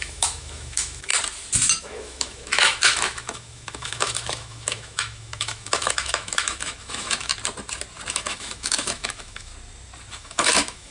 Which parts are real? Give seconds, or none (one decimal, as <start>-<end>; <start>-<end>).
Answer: 1.1-1.8; 7.3-8.1; 9.5-10.1